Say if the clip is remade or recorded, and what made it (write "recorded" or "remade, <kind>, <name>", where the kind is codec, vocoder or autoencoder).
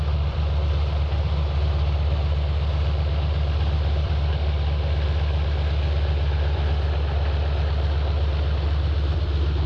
remade, vocoder, BigVGAN v2